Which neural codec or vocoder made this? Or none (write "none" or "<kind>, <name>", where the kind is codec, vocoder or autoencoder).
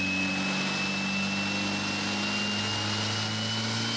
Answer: none